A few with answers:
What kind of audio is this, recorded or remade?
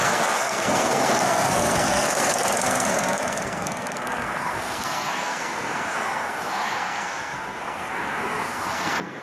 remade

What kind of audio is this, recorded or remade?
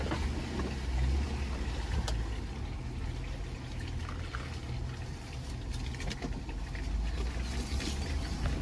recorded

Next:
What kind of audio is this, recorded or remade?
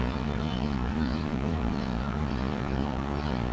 remade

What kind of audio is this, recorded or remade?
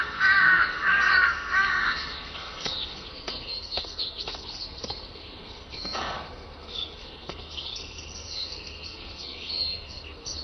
remade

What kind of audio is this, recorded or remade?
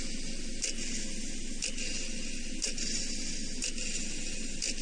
recorded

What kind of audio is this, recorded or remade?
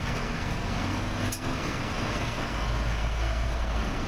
remade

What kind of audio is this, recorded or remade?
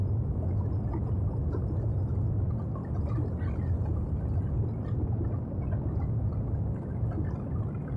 recorded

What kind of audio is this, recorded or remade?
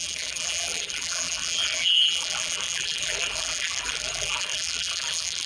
remade